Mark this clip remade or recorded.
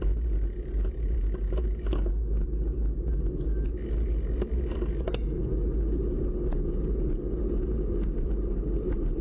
recorded